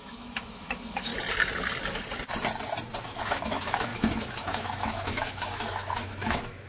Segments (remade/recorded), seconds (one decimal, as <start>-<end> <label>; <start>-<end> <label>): 0.0-1.1 remade; 1.1-3.0 recorded; 3.0-6.7 remade